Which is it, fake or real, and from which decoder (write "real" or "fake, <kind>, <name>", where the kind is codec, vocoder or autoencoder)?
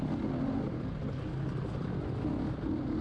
real